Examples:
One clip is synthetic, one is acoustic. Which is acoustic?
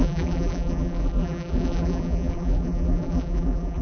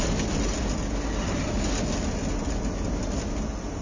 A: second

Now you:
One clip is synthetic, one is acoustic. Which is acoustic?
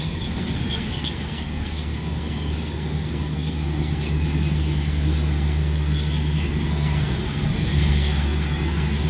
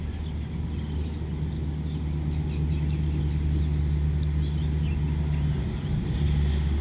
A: second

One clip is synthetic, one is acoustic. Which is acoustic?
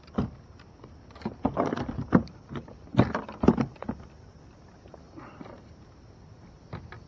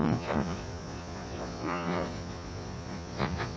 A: first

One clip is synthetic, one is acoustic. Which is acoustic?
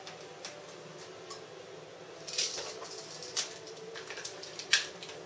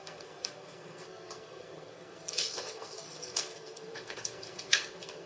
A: first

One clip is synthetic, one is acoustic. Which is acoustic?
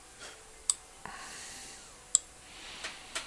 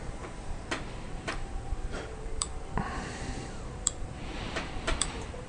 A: first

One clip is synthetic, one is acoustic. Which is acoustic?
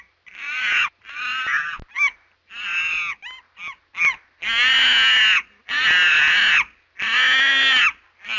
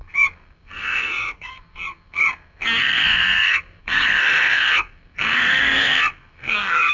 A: first